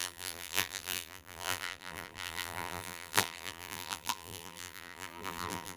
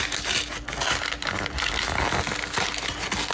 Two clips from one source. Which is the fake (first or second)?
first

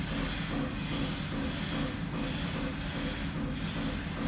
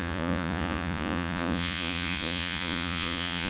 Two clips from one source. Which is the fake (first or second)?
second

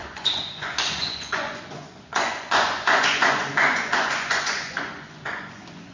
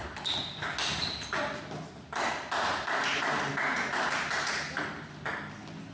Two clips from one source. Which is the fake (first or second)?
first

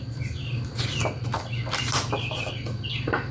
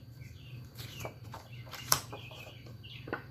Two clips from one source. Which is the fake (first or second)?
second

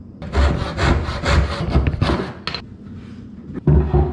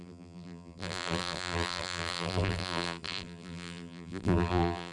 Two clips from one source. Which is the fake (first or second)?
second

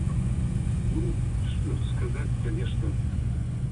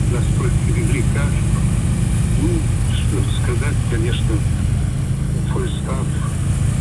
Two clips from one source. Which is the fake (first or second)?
first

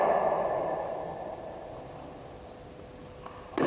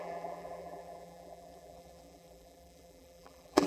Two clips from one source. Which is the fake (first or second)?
second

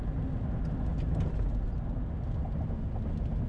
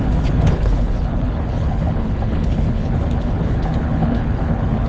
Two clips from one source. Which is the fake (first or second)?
second